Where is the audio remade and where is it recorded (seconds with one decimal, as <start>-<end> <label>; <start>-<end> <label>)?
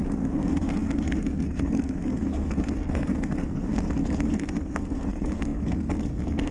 0.0-6.5 remade